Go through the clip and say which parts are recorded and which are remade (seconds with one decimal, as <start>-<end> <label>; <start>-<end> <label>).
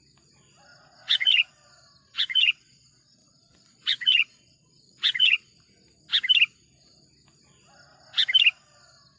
0.0-0.7 recorded; 0.7-1.5 remade; 1.5-2.1 recorded; 2.1-5.5 remade; 5.5-9.2 recorded